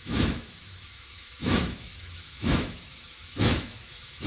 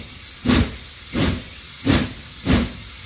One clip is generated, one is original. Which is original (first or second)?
second